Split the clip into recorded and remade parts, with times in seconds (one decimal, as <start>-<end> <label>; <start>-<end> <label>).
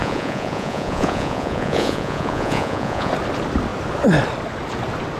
0.0-3.1 remade; 3.1-5.2 recorded